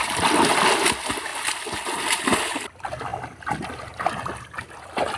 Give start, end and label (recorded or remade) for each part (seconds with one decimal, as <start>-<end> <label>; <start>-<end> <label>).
0.0-5.2 recorded